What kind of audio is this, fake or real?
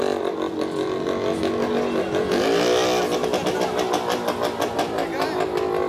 real